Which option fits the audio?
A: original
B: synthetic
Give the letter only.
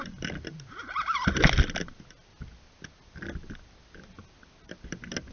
A